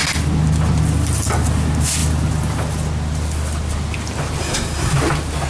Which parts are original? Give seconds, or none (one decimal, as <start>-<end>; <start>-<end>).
0.0-4.4; 4.9-5.5